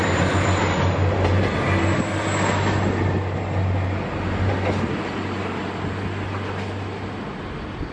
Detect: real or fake real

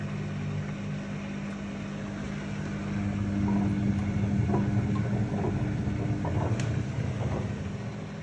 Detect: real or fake real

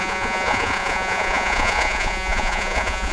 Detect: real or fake fake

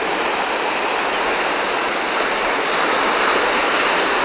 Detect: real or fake real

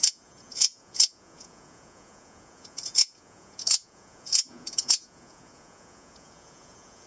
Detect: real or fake fake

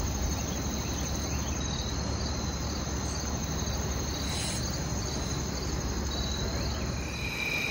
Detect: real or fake real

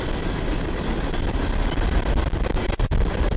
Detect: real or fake real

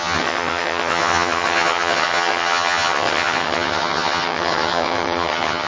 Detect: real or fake fake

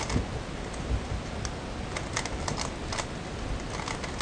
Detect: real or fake real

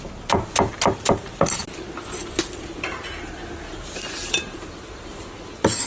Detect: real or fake real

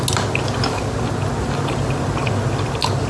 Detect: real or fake real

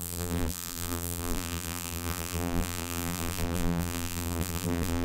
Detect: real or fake fake